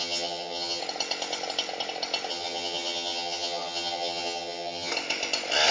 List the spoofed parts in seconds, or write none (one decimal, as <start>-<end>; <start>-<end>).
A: 0.0-0.8; 2.3-4.9